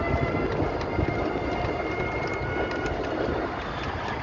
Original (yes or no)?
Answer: yes